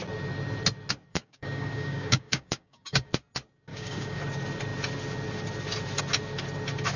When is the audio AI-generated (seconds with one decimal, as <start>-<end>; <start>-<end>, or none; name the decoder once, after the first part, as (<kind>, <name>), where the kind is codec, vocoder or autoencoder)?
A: 1.1-3.1 (codec, DAC); 3.7-4.2